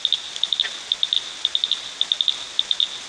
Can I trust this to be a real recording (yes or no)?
yes